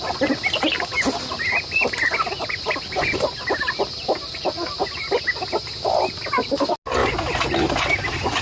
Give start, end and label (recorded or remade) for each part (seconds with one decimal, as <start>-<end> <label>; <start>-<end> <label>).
0.0-8.4 recorded